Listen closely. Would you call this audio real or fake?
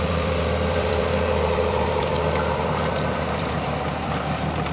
fake